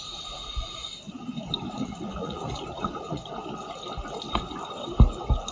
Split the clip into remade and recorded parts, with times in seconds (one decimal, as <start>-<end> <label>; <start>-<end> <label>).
0.0-0.9 remade; 0.9-1.7 recorded; 1.7-3.2 remade; 3.2-5.5 recorded